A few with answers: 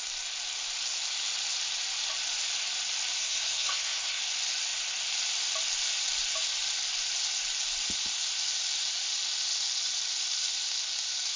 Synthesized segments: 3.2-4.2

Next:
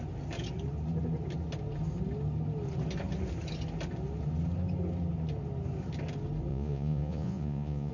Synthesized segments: 6.5-7.9

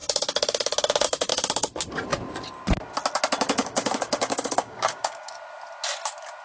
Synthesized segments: 3.6-5.3

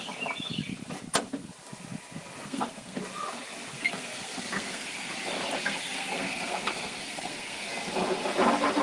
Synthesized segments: 2.4-3.0; 3.7-5.1; 5.6-7.7

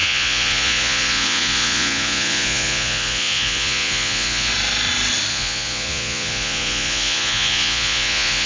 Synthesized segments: 0.0-4.5; 5.3-8.5